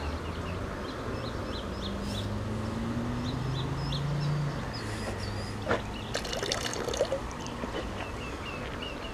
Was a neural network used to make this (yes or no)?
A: no